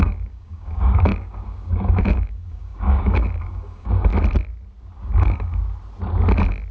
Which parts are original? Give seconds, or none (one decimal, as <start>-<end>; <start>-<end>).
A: 4.1-5.0; 5.6-6.7